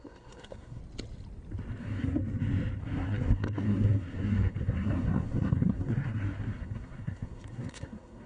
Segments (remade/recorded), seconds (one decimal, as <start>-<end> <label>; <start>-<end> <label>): 0.0-0.8 remade; 0.8-1.8 recorded; 1.8-2.2 remade; 2.2-2.8 recorded; 2.8-8.3 remade